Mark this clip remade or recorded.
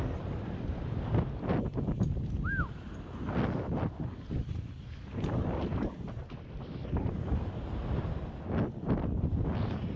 recorded